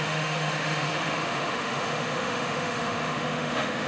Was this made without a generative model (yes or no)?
no